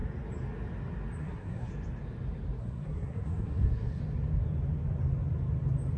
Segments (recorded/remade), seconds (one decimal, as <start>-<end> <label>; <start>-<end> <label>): 0.0-1.2 recorded; 1.2-1.7 remade; 1.7-2.6 recorded; 2.6-4.0 remade; 4.0-6.0 recorded